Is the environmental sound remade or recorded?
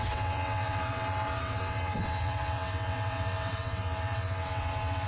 remade